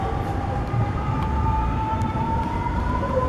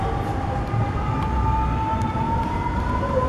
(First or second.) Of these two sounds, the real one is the second